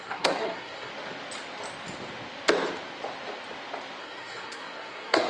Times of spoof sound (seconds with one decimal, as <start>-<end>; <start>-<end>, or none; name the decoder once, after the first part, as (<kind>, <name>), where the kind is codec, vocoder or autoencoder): 0.0-0.9 (codec, SNAC); 4.0-5.3